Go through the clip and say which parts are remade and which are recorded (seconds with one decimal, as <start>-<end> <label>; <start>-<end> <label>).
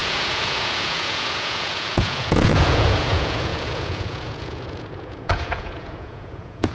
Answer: 0.0-6.7 remade